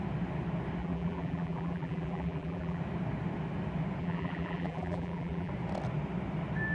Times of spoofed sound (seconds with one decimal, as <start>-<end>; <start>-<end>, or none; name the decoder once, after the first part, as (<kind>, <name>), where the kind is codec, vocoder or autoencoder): 0.8-2.8 (vocoder, BigVGAN v2); 4.0-5.5